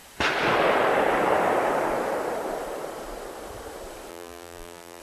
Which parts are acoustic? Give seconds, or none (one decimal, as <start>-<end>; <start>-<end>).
0.0-4.1